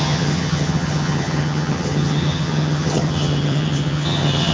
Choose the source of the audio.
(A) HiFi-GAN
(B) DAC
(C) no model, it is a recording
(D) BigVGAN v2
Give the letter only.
A